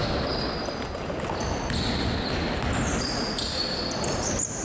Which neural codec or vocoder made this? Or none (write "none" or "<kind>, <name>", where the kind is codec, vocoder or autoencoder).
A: none